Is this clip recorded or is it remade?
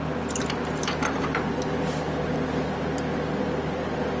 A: recorded